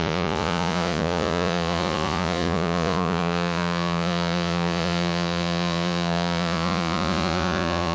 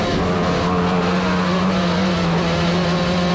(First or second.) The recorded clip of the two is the second